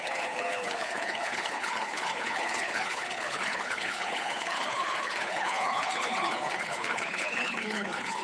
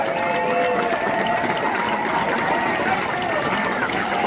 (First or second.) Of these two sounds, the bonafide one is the second